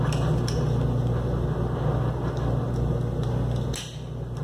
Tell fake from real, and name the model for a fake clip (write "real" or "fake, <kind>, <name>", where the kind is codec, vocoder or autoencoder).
real